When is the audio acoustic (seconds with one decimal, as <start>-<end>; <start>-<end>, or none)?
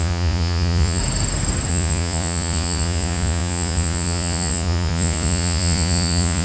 1.0-1.7